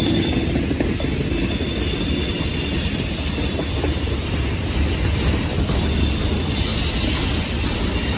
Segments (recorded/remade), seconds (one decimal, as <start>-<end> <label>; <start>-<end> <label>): 0.0-8.2 recorded